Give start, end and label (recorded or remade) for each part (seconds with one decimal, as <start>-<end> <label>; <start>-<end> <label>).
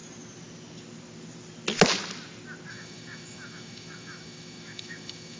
0.0-2.7 recorded; 2.7-5.4 remade